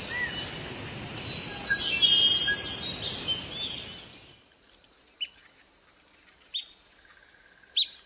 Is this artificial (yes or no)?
no